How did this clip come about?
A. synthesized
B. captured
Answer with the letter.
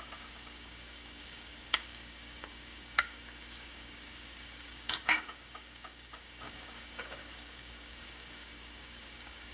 A